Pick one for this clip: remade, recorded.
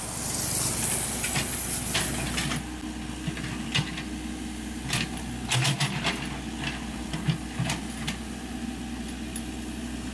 recorded